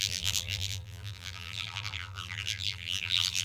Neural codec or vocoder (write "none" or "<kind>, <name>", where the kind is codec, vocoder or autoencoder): vocoder, BigVGAN v2